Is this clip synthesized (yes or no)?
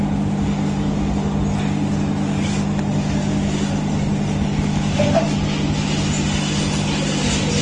no